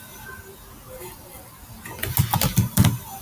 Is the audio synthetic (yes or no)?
no